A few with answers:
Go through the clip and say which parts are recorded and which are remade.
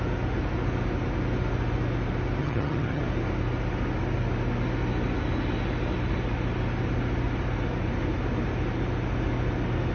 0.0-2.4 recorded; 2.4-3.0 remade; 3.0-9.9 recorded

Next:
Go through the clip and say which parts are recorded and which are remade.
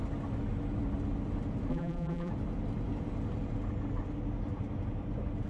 0.0-1.7 recorded; 1.7-2.3 remade; 2.3-5.5 recorded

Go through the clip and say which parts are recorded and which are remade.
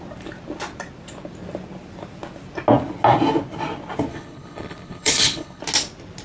0.0-4.1 recorded; 4.1-5.6 remade; 5.6-6.2 recorded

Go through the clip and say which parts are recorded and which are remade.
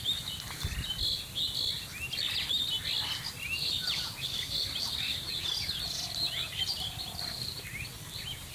0.0-8.5 recorded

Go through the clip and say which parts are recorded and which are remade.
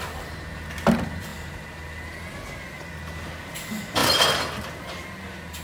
0.0-5.6 recorded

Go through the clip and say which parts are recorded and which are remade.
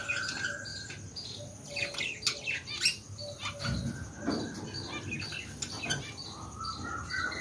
0.0-7.4 recorded